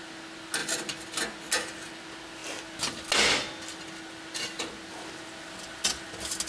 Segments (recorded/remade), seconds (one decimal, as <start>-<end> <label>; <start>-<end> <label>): 0.0-6.5 recorded